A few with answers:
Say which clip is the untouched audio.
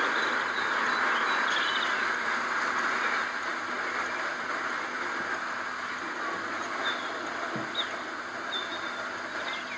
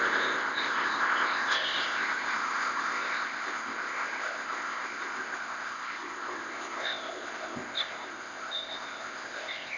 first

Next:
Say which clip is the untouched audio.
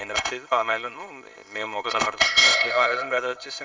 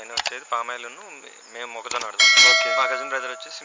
second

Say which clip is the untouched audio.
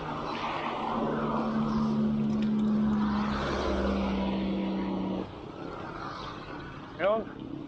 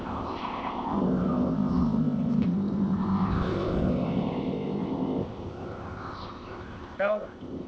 first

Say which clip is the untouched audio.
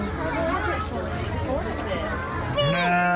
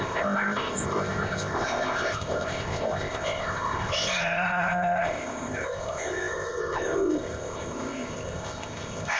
first